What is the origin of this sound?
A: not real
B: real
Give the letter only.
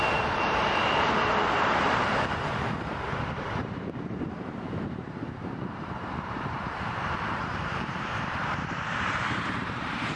A